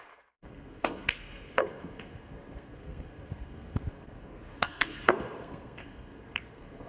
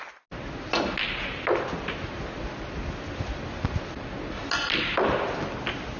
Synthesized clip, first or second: first